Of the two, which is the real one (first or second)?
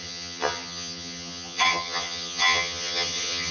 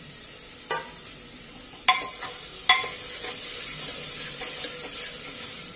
second